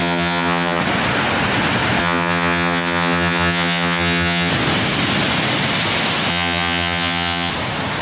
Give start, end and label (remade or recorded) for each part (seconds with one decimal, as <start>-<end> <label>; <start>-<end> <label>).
0.0-0.8 remade; 0.8-2.0 recorded; 2.0-4.5 remade; 4.5-6.3 recorded; 6.3-7.5 remade; 7.5-8.0 recorded

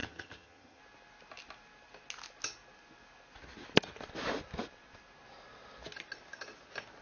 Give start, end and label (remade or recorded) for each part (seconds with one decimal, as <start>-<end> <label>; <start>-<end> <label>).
0.0-0.8 remade; 0.8-7.0 recorded

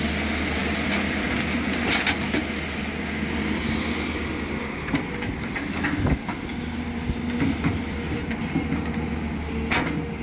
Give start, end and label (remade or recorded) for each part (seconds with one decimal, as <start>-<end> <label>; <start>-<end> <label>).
0.0-10.2 recorded

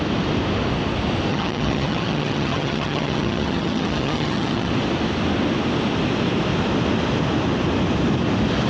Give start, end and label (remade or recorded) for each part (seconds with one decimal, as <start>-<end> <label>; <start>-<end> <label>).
0.0-1.3 recorded; 1.3-4.7 remade; 4.7-8.7 recorded

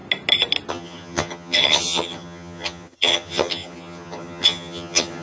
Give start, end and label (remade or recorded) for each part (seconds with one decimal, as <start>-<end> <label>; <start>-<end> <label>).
0.0-0.7 recorded; 0.7-5.2 remade

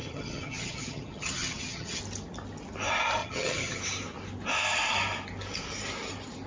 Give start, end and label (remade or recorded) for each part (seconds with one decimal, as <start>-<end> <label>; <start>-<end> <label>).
0.0-2.0 remade; 2.0-3.2 recorded; 3.2-3.8 remade; 3.8-6.5 recorded